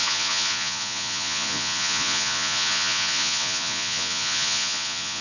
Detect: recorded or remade remade